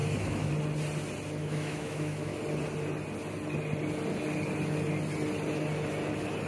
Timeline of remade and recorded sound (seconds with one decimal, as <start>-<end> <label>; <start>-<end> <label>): 0.0-0.5 remade; 0.5-1.4 recorded; 1.4-2.4 remade; 2.4-6.5 recorded